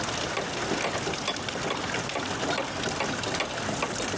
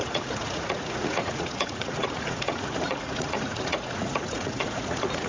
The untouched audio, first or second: first